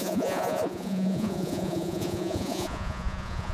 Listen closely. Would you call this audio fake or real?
fake